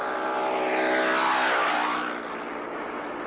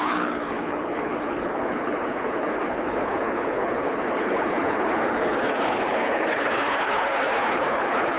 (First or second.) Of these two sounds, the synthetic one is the second